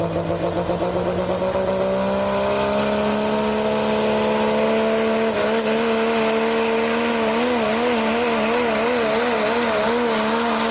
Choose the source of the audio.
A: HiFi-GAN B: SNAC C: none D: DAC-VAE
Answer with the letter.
C